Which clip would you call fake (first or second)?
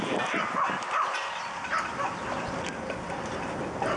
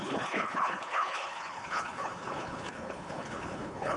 second